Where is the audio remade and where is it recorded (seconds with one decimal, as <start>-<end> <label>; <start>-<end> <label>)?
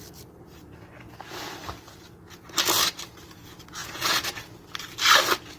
0.0-3.8 recorded; 3.8-4.4 remade; 4.4-5.6 recorded